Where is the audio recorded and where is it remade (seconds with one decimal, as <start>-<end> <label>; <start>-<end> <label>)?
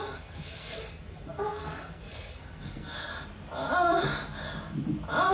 0.0-3.1 remade; 3.1-5.3 recorded